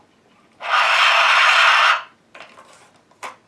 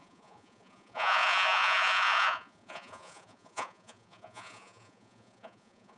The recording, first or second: first